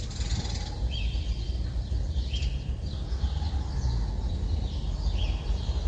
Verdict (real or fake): real